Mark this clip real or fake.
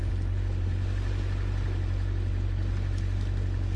real